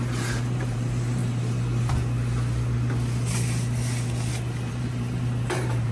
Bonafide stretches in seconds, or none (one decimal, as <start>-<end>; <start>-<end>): 1.2-4.7